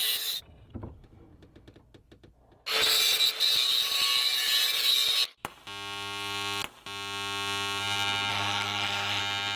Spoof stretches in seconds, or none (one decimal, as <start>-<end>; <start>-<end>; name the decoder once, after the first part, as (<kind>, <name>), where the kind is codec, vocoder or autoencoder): 8.3-9.2 (codec, SNAC)